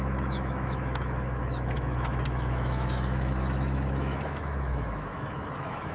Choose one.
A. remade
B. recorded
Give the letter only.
A